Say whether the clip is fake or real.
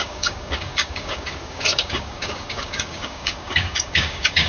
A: fake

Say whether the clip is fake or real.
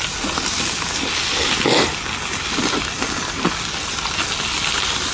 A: real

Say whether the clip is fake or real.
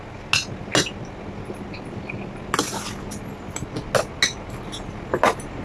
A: real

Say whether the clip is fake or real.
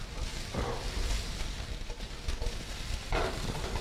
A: real